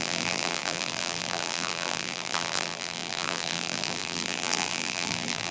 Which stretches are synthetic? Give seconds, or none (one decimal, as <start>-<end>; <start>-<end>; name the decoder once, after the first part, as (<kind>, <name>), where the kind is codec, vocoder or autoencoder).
0.0-5.5 (vocoder, BigVGAN v2)